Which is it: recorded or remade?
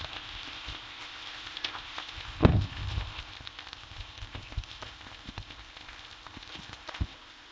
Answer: remade